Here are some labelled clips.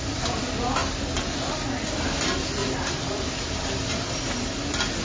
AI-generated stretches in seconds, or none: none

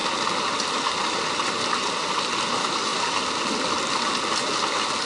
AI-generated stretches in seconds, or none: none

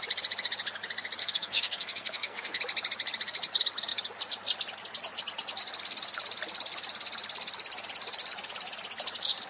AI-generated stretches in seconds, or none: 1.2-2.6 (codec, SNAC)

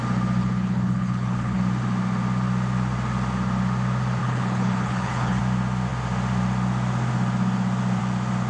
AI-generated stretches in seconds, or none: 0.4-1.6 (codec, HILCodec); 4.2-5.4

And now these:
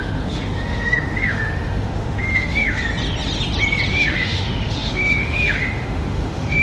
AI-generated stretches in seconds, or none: 0.0-2.9 (autoencoder, DAC-VAE); 3.9-6.6